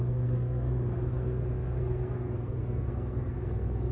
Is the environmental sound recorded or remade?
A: remade